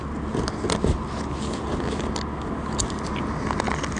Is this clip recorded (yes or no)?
yes